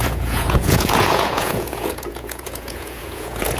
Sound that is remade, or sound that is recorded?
remade